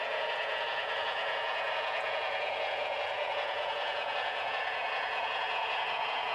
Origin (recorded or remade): remade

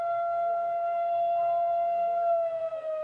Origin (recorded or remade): remade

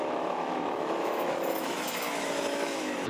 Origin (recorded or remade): remade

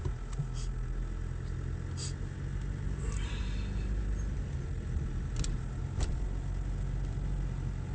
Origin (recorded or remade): recorded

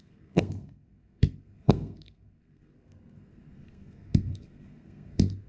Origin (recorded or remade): remade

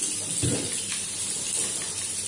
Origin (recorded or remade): recorded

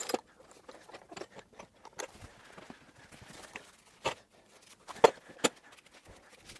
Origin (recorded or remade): recorded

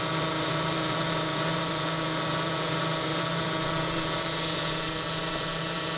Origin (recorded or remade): remade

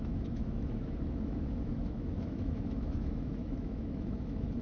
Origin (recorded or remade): remade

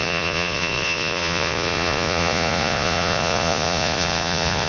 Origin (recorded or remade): remade